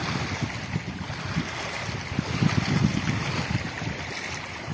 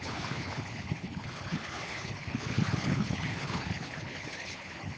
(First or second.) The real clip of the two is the first